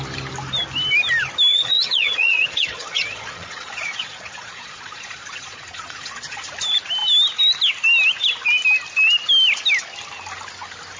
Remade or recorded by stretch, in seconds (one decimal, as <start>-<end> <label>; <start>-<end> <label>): 0.0-1.5 recorded; 1.5-6.5 remade; 6.5-11.0 recorded